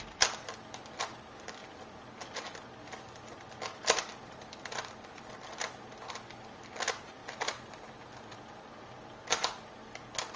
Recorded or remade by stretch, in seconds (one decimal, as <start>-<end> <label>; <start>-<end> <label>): 0.0-10.4 recorded